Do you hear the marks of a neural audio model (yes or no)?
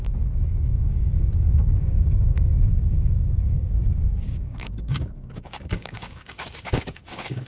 yes